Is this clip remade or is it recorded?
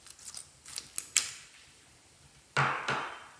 recorded